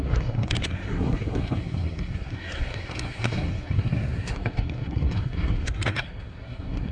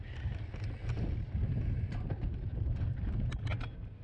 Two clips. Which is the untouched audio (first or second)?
second